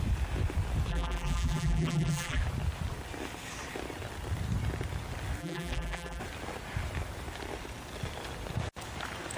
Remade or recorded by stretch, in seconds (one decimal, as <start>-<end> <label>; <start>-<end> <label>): 0.0-0.9 recorded; 0.9-2.4 remade; 2.4-5.4 recorded; 5.4-6.2 remade; 6.2-9.4 recorded